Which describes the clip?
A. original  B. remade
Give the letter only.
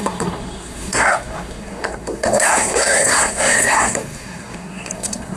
B